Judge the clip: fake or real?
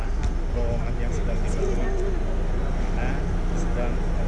real